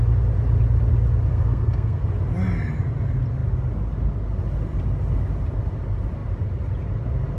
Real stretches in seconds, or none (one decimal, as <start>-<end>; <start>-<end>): 0.0-1.3; 2.0-7.4